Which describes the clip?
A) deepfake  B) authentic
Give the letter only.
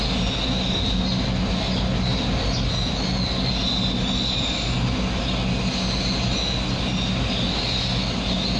B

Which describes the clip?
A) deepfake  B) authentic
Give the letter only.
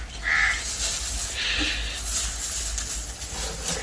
B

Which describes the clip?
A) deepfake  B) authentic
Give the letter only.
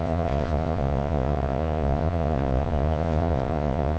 A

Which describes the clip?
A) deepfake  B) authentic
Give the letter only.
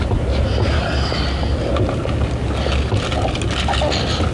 B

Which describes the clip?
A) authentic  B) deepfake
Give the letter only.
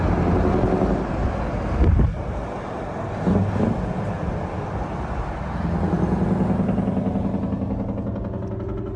A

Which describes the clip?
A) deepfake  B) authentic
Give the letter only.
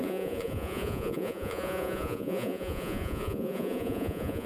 A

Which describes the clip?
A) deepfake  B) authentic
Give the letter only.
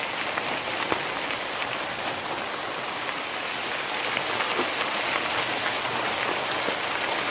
B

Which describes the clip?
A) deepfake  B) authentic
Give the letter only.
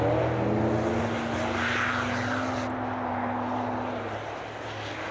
B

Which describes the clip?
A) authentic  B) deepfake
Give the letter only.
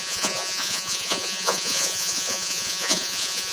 B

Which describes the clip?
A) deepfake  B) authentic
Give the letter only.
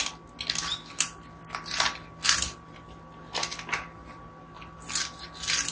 B